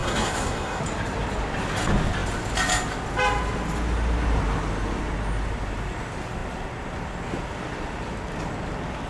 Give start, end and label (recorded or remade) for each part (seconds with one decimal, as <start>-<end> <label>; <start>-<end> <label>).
0.0-0.8 remade; 0.8-9.1 recorded